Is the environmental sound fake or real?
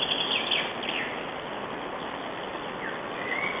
real